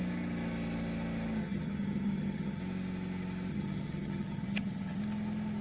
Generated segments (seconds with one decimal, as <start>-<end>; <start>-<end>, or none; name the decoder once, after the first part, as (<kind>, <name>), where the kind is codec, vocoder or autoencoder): 1.4-2.6 (vocoder, HiFi-GAN); 3.5-5.0